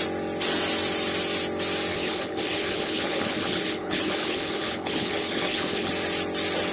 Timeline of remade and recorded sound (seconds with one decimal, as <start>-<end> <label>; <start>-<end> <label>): 0.0-1.9 recorded; 1.9-5.9 remade; 5.9-6.7 recorded